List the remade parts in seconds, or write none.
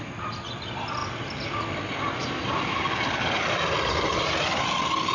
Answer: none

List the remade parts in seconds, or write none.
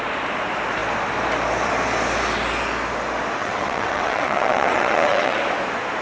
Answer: 3.4-5.4 (vocoder, WaveNeXt)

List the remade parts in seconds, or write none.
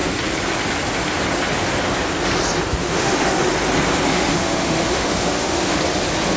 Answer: 2.8-3.5 (autoencoder, DAC-VAE); 4.1-5.8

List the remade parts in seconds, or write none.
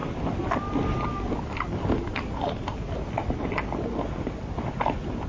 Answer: none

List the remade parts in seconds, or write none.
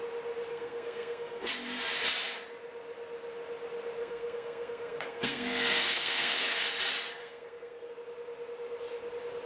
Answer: 0.5-1.5 (codec, SNAC); 4.0-6.7; 7.2-7.9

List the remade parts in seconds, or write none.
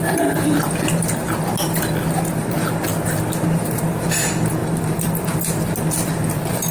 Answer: 4.6-5.2 (vocoder, BigVGAN v2)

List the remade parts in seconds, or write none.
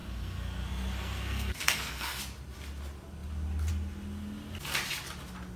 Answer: 0.0-2.2 (codec, SNAC)